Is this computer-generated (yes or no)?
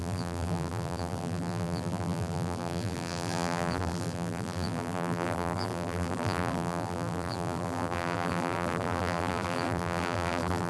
yes